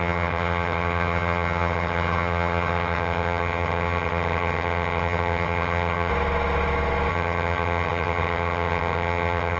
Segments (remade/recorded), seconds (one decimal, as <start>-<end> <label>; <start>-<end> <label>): 0.0-6.1 remade; 6.1-7.1 recorded; 7.1-9.6 remade

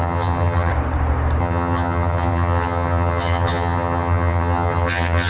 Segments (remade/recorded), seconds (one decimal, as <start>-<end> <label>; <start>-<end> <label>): 0.0-0.7 remade; 0.7-1.4 recorded; 1.4-5.3 remade

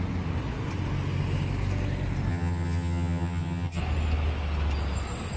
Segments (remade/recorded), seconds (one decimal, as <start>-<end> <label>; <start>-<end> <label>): 0.0-2.3 recorded; 2.3-3.8 remade; 3.8-5.4 recorded